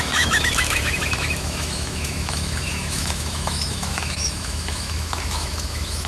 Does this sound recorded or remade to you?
remade